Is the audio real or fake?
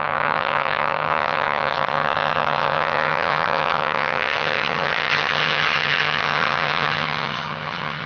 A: fake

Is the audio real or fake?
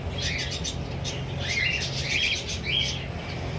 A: real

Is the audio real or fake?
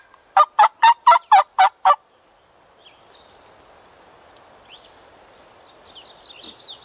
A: real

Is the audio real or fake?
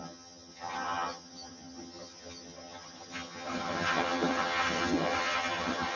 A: fake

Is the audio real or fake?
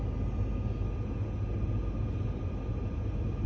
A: real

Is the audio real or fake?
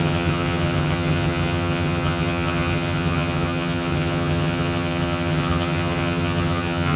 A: fake